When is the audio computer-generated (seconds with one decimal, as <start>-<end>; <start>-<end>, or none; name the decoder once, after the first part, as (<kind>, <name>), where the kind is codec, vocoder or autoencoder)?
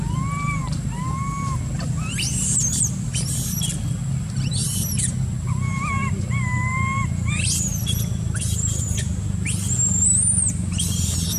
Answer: none